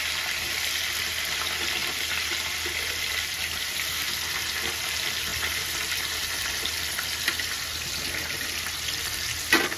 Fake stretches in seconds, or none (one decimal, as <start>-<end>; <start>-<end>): none